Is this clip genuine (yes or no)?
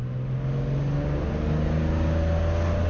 yes